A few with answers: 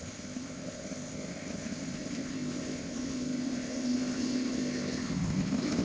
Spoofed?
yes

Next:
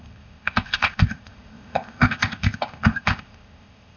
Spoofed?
yes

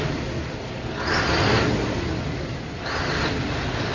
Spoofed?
no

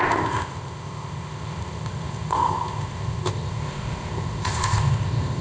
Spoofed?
yes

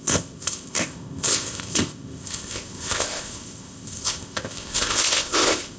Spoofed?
yes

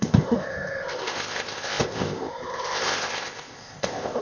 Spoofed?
yes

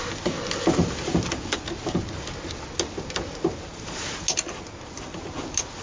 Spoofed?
no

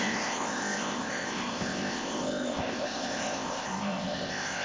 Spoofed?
yes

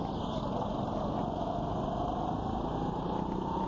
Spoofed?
no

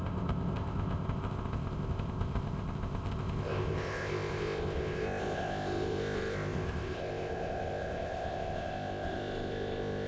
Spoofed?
yes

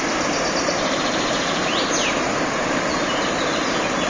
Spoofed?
no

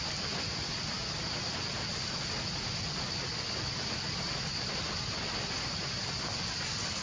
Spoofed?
no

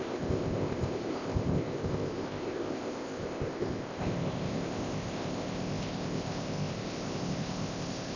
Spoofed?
yes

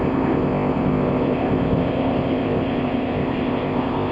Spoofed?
yes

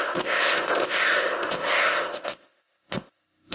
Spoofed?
yes